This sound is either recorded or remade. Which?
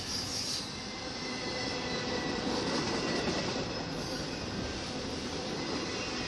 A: recorded